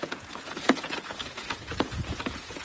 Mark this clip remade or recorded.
remade